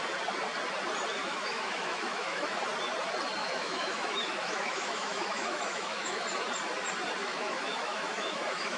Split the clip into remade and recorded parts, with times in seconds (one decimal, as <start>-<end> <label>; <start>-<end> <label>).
0.0-1.2 recorded; 1.2-2.6 remade; 2.6-3.4 recorded; 3.4-6.2 remade; 6.2-7.2 recorded; 7.2-8.8 remade